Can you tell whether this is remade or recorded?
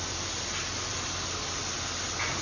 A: recorded